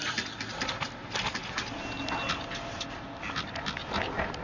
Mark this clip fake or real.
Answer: real